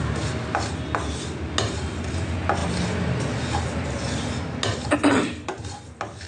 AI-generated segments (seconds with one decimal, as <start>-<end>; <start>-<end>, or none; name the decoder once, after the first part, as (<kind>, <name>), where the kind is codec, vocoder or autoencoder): none